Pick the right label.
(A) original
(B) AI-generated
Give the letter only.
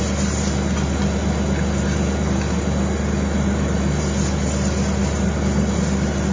A